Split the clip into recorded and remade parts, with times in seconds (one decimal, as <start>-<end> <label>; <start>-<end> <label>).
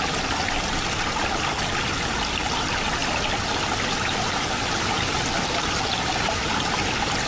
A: 0.0-7.3 recorded